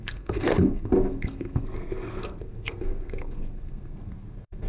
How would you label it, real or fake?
fake